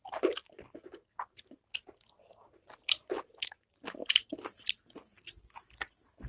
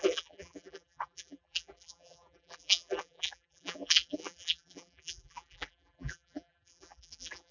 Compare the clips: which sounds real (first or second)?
first